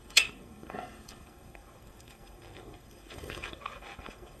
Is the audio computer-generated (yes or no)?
yes